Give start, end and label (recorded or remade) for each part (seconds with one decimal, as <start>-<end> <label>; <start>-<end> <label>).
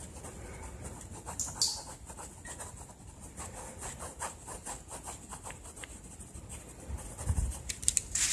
0.0-8.3 recorded